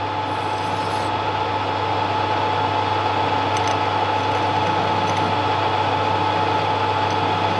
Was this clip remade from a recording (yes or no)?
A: no